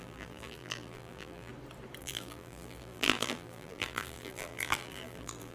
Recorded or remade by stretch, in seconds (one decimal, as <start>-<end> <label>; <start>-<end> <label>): 0.0-1.5 remade; 1.5-2.0 recorded; 2.0-5.5 remade